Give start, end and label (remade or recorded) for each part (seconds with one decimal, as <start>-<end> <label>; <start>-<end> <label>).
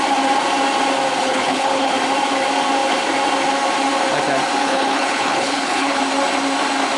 0.0-1.2 recorded; 1.2-1.9 remade; 1.9-4.6 recorded; 4.6-6.0 remade; 6.0-7.0 recorded